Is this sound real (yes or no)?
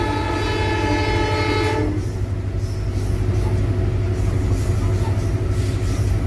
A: yes